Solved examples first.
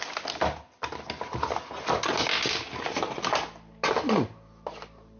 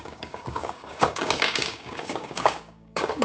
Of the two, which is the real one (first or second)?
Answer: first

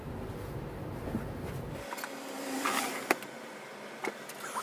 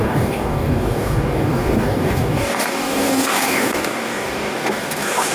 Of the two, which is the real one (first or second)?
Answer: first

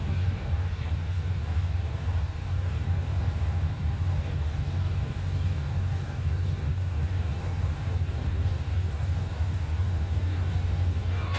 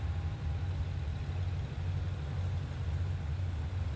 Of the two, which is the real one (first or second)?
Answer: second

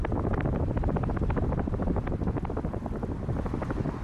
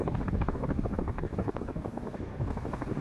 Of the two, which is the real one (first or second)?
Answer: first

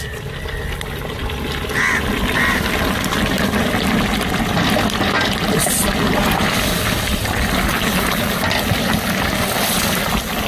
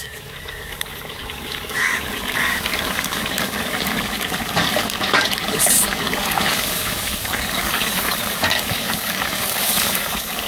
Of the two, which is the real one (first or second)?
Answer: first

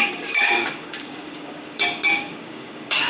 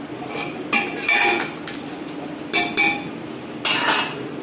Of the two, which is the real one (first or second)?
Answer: second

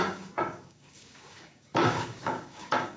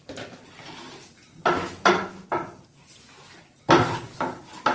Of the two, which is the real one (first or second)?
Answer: second